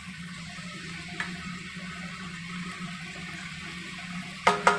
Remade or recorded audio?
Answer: recorded